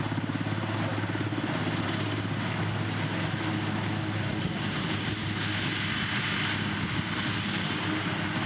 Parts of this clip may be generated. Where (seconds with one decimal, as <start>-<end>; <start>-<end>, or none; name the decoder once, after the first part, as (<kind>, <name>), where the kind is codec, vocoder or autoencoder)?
none

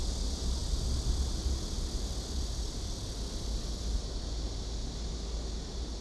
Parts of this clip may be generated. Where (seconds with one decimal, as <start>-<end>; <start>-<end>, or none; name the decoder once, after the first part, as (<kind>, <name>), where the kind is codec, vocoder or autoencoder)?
none

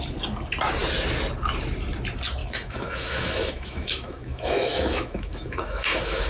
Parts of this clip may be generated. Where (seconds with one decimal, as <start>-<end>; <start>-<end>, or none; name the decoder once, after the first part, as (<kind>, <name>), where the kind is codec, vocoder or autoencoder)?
2.4-6.3 (autoencoder, DAC-VAE)

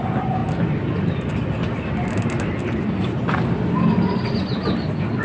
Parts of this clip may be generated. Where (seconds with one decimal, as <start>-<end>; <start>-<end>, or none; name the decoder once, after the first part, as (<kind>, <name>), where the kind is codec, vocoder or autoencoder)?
none

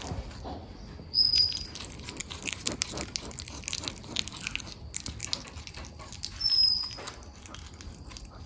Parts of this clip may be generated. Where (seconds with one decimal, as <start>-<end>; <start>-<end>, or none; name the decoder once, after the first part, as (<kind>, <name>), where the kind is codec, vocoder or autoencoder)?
none

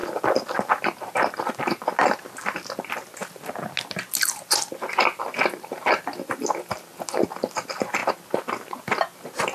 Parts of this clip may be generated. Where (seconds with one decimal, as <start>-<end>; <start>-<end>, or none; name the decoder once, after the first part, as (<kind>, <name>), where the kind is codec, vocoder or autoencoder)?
none

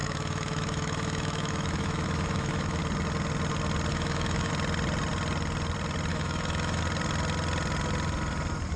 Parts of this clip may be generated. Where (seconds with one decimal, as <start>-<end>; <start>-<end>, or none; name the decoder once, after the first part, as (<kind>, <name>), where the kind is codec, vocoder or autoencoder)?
0.0-2.8 (autoencoder, DAC-VAE); 3.9-4.5; 6.1-6.8

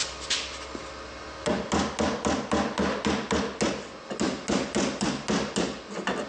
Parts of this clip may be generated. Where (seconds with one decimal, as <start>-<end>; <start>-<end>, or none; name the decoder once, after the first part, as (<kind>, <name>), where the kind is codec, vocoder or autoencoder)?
none